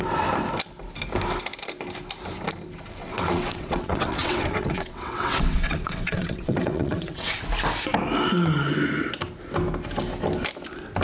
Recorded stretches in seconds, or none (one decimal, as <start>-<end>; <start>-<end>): 0.0-3.0; 7.4-11.0